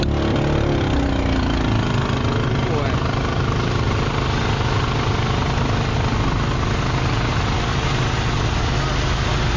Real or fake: real